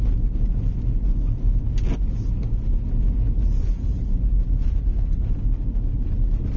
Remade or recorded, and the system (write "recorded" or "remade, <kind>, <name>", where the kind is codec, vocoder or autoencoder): recorded